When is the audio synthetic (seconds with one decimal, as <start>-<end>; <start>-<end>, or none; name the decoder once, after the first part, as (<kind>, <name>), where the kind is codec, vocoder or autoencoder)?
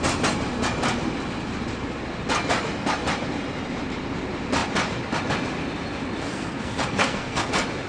6.2-7.5 (codec, SNAC)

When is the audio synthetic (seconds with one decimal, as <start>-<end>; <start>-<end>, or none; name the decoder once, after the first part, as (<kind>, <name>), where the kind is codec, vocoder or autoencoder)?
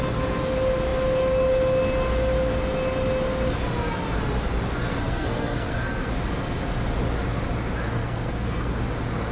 4.9-6.1 (codec, SNAC); 8.0-8.8